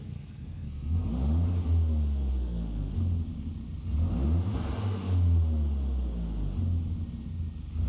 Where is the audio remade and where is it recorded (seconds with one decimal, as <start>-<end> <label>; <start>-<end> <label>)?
0.0-1.1 remade; 1.1-2.3 recorded; 2.3-2.9 remade; 2.9-7.9 recorded